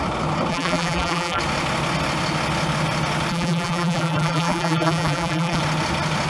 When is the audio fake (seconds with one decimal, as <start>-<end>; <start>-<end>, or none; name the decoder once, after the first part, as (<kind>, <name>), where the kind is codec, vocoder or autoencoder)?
0.5-1.4 (vocoder, BigVGAN v2); 3.3-5.6